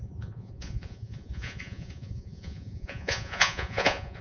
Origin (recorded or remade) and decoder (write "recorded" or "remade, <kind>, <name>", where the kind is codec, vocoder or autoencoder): remade, vocoder, Vocos